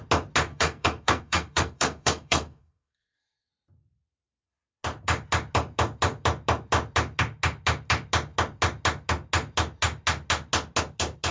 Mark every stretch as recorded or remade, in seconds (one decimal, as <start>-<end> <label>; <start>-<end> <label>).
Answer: 0.0-0.5 recorded; 0.5-3.5 remade; 3.5-11.3 recorded